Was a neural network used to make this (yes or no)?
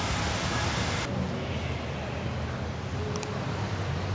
no